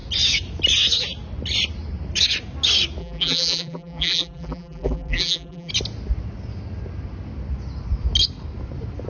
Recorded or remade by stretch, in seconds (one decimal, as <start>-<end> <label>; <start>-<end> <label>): 0.0-3.0 recorded; 3.0-5.7 remade; 5.7-9.1 recorded